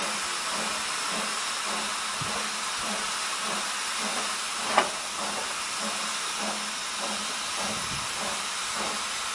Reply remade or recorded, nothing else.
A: recorded